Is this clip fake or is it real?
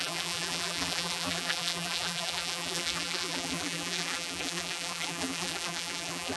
fake